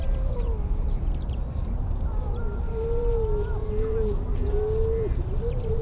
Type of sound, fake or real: real